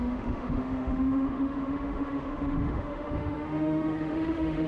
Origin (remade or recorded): remade